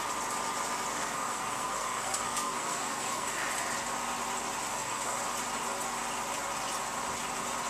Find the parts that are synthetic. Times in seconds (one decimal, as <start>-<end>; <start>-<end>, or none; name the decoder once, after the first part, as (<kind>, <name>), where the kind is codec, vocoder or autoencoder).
0.9-3.5 (codec, SNAC); 4.7-5.2